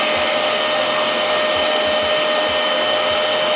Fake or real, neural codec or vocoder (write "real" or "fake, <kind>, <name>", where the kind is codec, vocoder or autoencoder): real